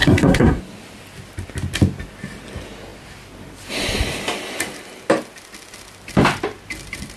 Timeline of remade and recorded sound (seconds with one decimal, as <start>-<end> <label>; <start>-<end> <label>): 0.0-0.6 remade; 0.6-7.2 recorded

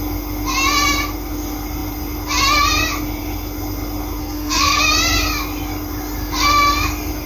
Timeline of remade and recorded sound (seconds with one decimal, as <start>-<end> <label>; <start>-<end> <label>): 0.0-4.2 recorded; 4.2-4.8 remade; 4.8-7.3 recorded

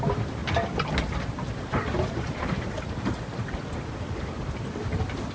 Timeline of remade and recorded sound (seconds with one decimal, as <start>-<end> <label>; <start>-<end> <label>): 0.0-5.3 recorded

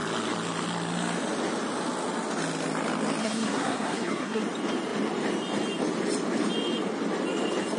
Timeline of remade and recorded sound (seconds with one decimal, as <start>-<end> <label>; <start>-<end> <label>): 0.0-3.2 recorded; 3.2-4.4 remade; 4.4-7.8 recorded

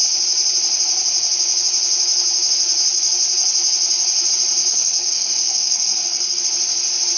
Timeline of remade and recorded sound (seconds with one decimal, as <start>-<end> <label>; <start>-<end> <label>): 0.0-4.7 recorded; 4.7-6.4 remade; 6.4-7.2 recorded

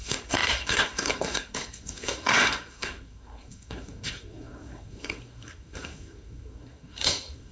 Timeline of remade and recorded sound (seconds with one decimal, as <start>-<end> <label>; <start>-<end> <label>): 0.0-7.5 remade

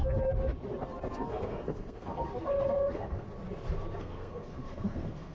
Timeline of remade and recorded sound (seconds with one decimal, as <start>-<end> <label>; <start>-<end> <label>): 0.0-1.1 recorded; 1.1-2.3 remade; 2.3-2.9 recorded; 2.9-3.3 remade; 3.3-4.0 recorded; 4.0-5.3 remade

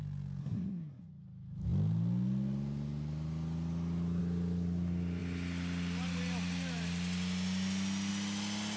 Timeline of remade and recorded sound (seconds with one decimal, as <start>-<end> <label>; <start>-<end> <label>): 0.0-0.4 recorded; 0.4-1.0 remade; 1.0-8.8 recorded